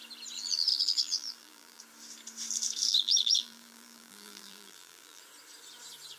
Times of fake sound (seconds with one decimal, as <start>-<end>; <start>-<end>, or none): 0.7-1.8; 2.9-5.2